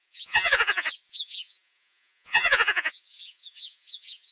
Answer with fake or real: fake